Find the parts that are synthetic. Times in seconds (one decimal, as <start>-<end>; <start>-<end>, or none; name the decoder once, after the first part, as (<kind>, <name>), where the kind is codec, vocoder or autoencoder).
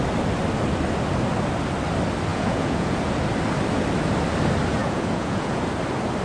2.3-3.1 (vocoder, Vocos); 4.8-5.6